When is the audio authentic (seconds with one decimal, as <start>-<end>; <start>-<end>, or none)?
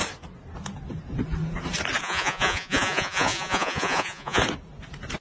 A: 0.0-2.0; 4.4-5.2